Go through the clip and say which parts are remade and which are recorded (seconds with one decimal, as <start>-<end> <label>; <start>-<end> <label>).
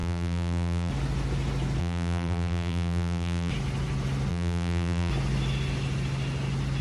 0.0-0.9 remade; 0.9-1.8 recorded; 1.8-3.5 remade; 3.5-4.3 recorded; 4.3-5.1 remade; 5.1-6.8 recorded